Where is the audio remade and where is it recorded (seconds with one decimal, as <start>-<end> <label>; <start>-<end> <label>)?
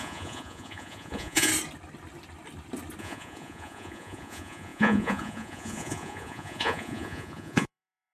0.0-1.5 remade; 1.5-3.0 recorded; 3.0-8.1 remade